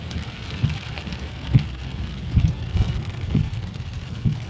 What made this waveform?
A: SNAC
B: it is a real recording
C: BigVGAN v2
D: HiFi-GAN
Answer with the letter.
A